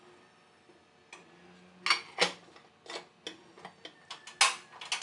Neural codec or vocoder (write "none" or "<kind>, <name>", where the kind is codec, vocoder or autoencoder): none